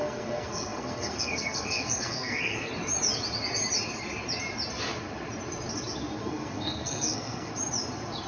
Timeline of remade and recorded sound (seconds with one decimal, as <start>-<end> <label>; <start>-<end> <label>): 0.0-2.7 remade; 2.7-6.2 recorded; 6.2-7.5 remade; 7.5-8.3 recorded